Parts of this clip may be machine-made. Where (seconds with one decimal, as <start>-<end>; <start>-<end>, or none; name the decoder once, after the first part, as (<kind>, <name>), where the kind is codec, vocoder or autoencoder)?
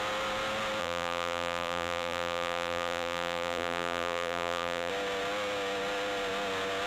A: 0.8-4.9 (vocoder, BigVGAN v2)